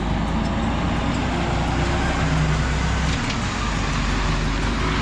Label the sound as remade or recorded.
recorded